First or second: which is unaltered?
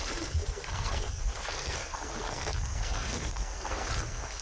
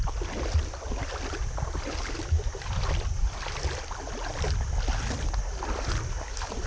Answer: second